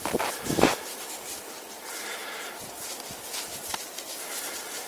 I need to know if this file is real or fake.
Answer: fake